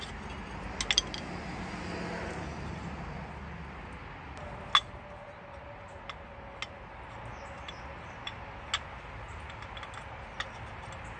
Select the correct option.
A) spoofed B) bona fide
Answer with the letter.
B